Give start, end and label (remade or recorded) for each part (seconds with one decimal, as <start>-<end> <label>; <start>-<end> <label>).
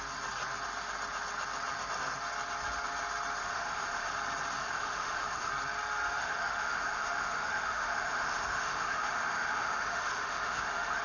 0.0-3.4 recorded; 3.4-4.1 remade; 4.1-4.6 recorded; 4.6-5.5 remade; 5.5-6.2 recorded; 6.2-11.0 remade